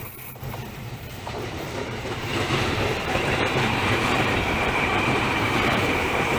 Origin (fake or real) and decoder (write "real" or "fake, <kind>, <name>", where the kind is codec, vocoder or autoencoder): fake, vocoder, BigVGAN v2